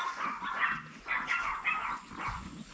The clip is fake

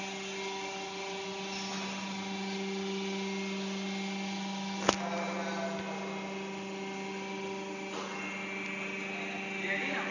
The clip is real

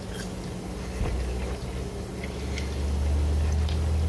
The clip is real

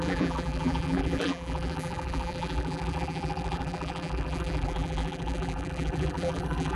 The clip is fake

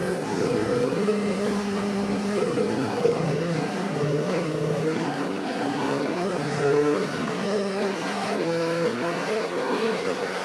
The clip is fake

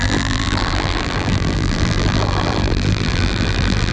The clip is fake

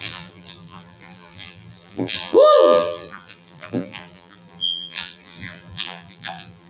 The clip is fake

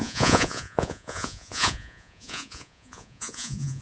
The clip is fake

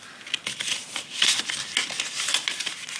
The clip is real